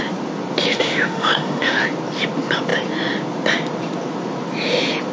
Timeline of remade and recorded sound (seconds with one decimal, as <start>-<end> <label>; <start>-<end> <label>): 0.0-0.7 recorded; 0.7-1.8 remade; 1.8-5.1 recorded